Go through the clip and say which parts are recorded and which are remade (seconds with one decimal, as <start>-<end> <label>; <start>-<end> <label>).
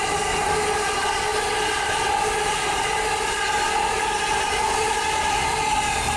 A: 0.0-6.2 recorded